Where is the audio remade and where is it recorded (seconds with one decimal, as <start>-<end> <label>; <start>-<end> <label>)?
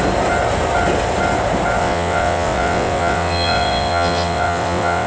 0.0-1.8 recorded; 1.8-5.1 remade